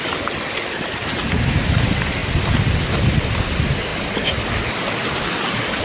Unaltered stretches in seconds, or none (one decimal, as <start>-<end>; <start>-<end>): 0.0-5.8